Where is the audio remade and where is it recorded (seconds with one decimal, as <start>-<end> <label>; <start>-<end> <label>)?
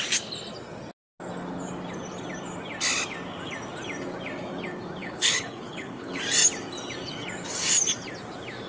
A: 0.0-5.0 recorded; 5.0-6.2 remade; 6.2-8.7 recorded